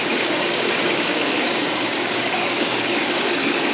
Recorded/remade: remade